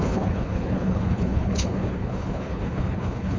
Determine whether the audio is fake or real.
fake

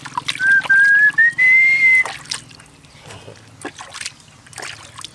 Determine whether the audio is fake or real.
real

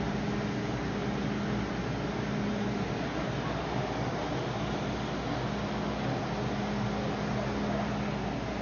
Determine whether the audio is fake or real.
real